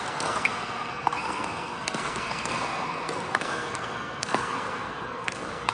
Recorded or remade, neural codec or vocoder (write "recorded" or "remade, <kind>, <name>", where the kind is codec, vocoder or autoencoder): remade, codec, SNAC